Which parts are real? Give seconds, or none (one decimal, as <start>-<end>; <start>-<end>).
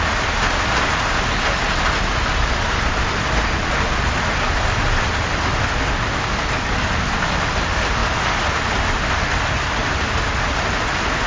0.0-8.0; 8.6-9.8; 10.3-11.3